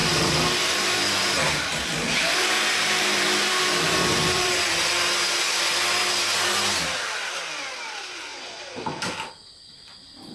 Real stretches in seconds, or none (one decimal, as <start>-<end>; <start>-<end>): 4.6-10.3